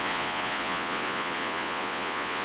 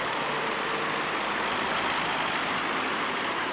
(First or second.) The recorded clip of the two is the second